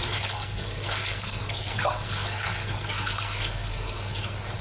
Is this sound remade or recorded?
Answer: remade